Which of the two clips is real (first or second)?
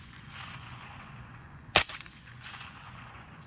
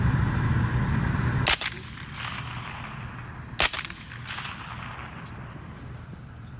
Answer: second